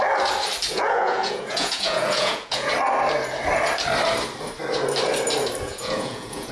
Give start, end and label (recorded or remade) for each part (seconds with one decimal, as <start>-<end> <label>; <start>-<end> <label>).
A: 0.0-0.7 recorded; 0.7-2.7 remade; 2.7-5.6 recorded; 5.6-6.5 remade